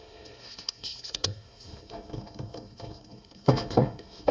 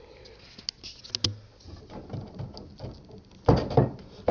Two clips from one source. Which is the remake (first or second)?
first